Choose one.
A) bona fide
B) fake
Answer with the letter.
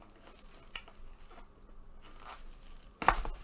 A